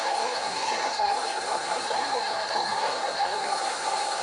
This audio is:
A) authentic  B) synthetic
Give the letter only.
B